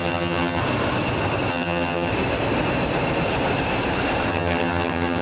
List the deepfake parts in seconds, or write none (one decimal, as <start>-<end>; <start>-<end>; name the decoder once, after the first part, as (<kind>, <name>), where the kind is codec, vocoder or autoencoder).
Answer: 0.0-0.6 (vocoder, HiFi-GAN); 1.5-2.1; 4.3-5.2